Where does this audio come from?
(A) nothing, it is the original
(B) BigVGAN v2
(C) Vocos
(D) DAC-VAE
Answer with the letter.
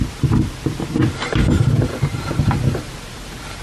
A